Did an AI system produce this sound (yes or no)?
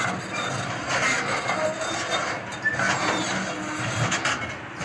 no